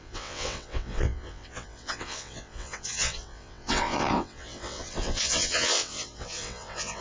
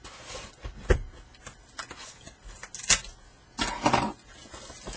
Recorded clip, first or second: second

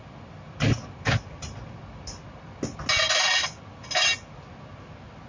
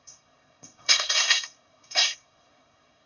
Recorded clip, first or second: first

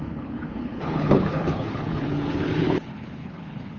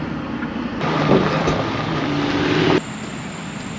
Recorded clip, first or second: second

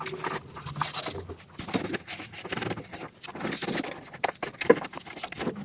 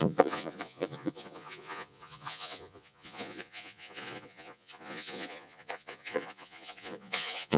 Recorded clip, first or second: first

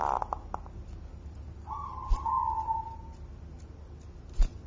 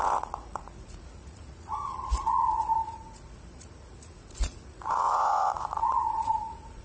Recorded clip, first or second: first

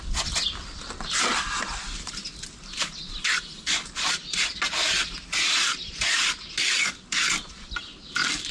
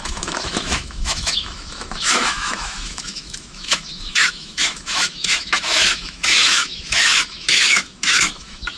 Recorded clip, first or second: first